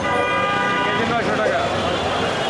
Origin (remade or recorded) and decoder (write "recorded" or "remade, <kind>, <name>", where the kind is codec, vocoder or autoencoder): recorded